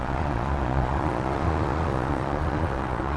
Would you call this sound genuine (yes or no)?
no